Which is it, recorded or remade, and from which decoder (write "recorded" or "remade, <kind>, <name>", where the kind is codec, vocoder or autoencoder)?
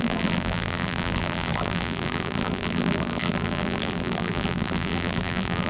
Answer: remade, vocoder, BigVGAN v2